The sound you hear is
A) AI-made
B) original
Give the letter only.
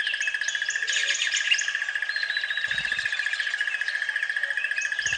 B